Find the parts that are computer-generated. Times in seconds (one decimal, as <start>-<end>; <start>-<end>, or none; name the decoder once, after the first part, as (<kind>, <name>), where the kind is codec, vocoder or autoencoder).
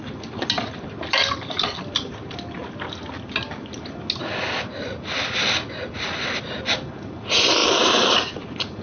none